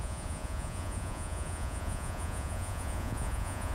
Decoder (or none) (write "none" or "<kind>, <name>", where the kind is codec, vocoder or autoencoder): vocoder, Vocos